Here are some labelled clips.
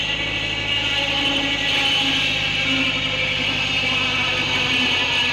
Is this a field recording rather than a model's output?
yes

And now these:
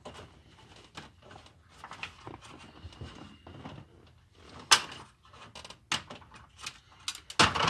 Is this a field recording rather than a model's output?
yes